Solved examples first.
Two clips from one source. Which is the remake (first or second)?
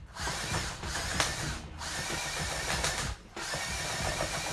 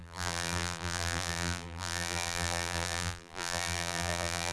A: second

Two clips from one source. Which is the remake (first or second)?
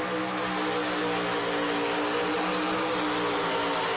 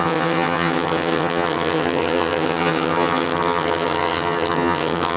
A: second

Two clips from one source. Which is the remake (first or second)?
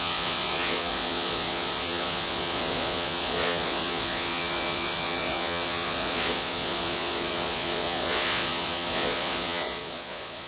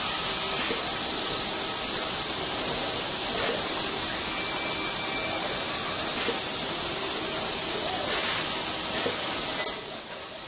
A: first